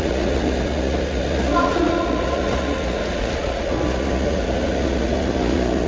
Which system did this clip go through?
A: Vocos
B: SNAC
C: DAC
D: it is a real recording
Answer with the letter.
A